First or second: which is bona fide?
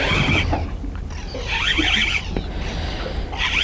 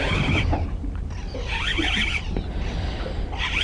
first